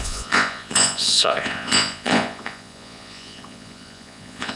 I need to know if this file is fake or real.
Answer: fake